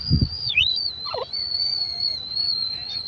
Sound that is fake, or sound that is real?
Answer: fake